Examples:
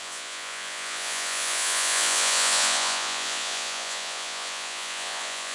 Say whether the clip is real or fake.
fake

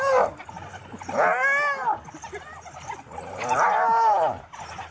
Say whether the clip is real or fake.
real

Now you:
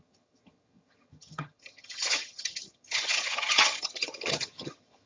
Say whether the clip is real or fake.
fake